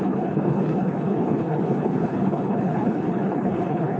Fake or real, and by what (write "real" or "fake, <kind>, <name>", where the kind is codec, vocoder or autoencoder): fake, codec, HILCodec